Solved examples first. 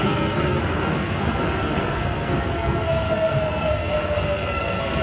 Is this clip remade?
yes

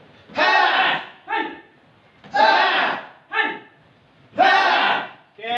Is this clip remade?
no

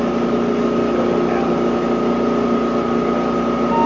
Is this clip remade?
no